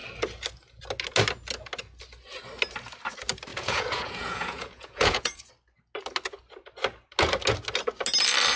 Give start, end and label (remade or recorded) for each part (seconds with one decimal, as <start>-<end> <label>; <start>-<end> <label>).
0.0-3.5 recorded; 3.5-5.5 remade; 5.5-8.6 recorded